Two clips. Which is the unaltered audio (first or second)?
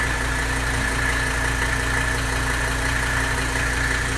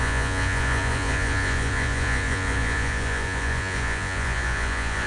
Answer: first